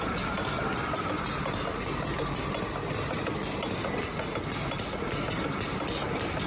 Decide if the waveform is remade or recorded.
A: recorded